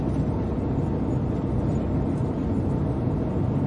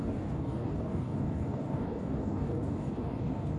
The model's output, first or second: second